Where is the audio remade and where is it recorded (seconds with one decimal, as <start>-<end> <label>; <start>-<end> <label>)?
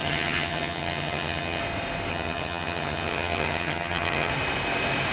0.0-1.6 remade; 1.6-2.1 recorded; 2.1-4.3 remade; 4.3-5.1 recorded